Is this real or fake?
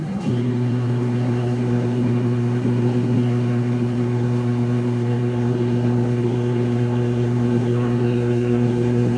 fake